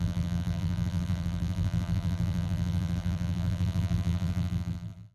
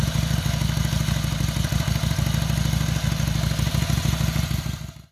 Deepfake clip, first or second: first